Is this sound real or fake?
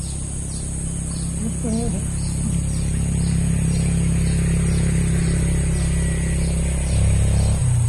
real